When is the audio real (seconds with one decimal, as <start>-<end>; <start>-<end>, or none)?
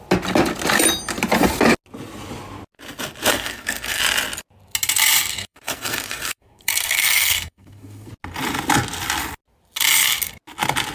0.0-3.3; 4.0-5.3; 8.1-10.9